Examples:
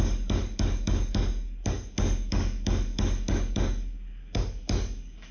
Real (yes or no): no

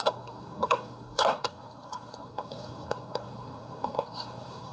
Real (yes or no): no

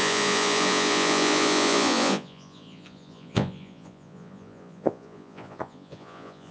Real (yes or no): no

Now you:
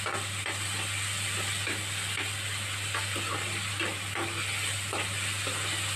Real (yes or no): yes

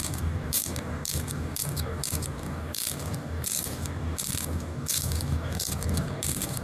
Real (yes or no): no